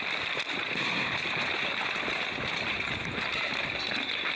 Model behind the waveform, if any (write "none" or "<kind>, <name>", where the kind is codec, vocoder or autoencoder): none